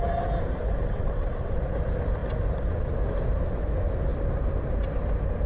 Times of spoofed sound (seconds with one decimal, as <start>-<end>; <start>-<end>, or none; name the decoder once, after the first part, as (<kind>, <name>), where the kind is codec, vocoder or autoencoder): 0.8-1.6 (vocoder, WaveNeXt)